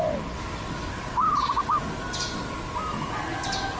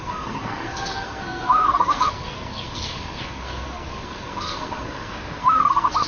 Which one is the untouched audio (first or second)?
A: first